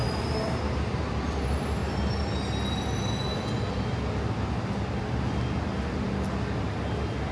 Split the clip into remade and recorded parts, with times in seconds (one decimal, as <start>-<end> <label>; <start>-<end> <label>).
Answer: 0.0-7.3 recorded